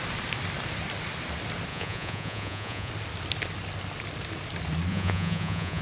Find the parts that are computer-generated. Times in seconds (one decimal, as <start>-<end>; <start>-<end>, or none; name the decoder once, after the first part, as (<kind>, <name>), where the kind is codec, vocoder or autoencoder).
1.7-2.9 (vocoder, Vocos); 4.9-5.8